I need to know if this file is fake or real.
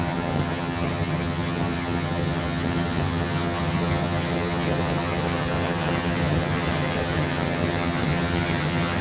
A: fake